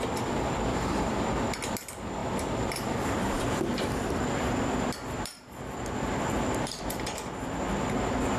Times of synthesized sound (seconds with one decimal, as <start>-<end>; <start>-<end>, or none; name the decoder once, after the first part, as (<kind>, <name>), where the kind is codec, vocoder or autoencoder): 0.7-1.3 (vocoder, BigVGAN v2); 2.2-6.8

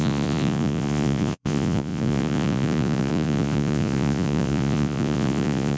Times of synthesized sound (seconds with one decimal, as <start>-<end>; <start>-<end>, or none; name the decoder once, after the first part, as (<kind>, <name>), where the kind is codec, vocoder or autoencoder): 0.0-5.8 (vocoder, Vocos)

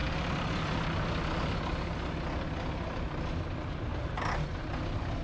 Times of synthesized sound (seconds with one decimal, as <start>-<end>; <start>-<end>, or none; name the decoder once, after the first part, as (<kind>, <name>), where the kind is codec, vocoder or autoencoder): none

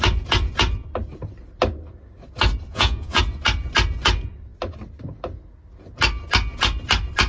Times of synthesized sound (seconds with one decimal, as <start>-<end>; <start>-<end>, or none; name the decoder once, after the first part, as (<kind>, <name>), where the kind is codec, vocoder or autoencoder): 2.7-3.2 (vocoder, Vocos)

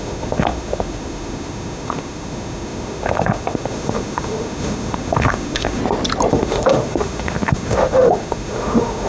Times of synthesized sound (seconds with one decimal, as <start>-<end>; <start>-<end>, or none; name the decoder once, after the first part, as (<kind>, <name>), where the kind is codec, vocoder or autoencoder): 0.0-5.8 (autoencoder, DAC-VAE); 6.3-9.1

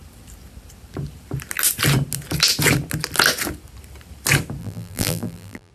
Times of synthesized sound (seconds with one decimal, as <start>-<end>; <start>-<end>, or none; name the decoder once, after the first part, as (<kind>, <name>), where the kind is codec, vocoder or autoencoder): 4.6-5.7 (vocoder, BigVGAN v2)

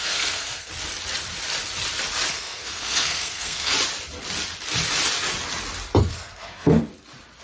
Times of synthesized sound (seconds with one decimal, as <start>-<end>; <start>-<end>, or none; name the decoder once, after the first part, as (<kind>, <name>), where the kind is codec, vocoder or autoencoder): 0.0-0.7 (codec, SNAC); 2.3-3.7; 6.0-6.8